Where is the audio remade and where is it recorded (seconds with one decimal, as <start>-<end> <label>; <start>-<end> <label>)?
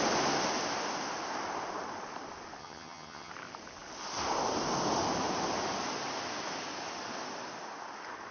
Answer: 0.0-2.6 recorded; 2.6-3.3 remade; 3.3-8.3 recorded